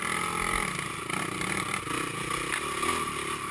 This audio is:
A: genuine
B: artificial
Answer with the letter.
A